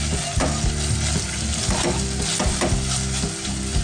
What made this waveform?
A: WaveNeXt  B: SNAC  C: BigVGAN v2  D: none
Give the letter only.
D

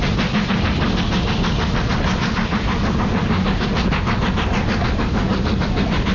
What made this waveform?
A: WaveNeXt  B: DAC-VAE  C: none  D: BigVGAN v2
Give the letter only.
C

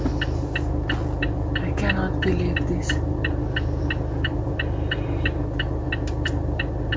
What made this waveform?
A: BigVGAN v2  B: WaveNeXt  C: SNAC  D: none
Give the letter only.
D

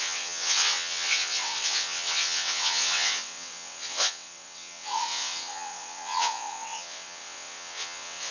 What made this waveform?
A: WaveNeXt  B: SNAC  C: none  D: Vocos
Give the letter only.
A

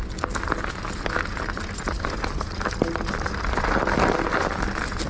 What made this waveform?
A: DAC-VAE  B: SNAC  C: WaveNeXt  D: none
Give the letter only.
D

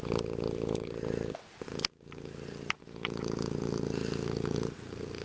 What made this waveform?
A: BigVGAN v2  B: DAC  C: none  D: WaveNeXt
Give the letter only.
C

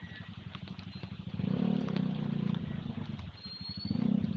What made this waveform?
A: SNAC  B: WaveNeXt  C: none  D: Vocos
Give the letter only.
C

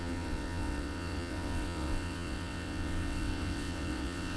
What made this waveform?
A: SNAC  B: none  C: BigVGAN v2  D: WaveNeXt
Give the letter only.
D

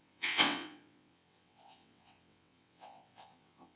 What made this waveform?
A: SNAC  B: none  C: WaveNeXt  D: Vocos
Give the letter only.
C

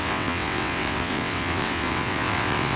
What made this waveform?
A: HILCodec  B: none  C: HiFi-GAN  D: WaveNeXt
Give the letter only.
D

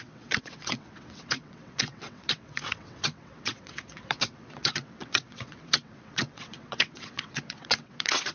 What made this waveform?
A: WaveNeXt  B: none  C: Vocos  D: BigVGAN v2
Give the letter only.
A